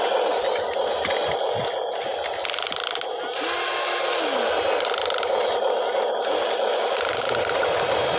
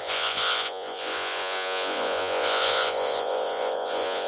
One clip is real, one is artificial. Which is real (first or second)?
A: first